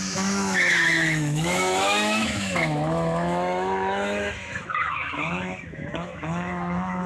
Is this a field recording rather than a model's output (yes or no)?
no